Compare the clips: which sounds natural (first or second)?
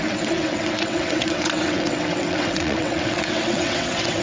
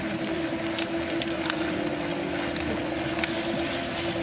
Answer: second